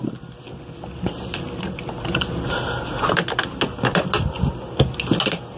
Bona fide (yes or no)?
yes